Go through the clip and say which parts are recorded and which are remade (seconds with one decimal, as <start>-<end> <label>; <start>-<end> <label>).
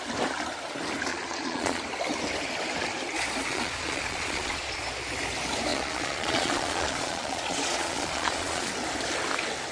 0.0-1.1 recorded; 1.1-1.8 remade; 1.8-3.5 recorded; 3.5-4.8 remade; 4.8-5.7 recorded; 5.7-8.7 remade; 8.7-9.7 recorded